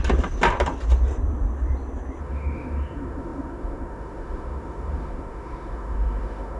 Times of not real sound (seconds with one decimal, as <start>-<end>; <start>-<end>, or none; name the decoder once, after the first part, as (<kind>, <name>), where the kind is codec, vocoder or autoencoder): 2.2-6.6 (autoencoder, DAC-VAE)